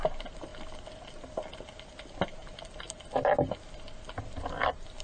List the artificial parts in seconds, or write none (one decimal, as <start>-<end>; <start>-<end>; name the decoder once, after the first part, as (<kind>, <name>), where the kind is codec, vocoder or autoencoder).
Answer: none